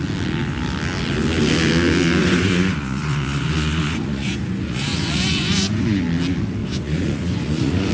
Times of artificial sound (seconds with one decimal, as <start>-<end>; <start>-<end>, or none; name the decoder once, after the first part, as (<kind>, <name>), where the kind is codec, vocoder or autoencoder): 2.2-6.0 (vocoder, Vocos); 6.6-7.9